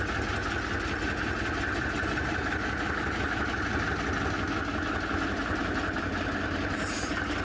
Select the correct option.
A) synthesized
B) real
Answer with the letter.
B